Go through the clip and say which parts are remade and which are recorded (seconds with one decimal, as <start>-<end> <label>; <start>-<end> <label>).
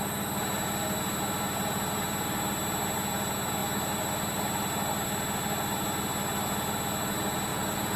0.0-7.5 recorded; 7.5-8.0 remade